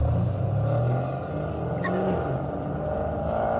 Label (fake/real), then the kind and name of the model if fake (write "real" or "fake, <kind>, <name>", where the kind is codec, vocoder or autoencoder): real